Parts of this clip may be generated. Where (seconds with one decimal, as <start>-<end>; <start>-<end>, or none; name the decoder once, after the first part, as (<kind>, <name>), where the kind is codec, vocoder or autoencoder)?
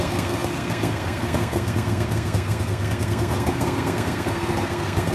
0.0-5.1 (codec, SNAC)